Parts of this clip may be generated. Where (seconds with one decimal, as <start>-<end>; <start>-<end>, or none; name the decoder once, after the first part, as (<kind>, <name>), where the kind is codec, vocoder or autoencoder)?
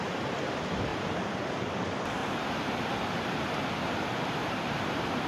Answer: 2.2-5.3 (vocoder, BigVGAN v2)